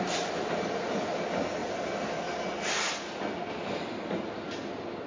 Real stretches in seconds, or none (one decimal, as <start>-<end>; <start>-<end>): 0.0-5.1